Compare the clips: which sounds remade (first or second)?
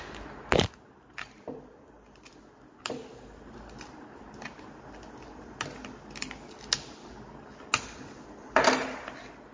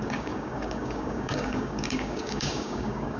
second